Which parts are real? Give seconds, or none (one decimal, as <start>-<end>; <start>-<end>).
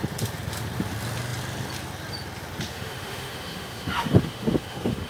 0.0-2.7